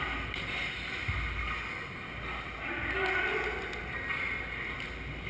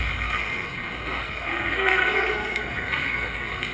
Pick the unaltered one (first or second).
first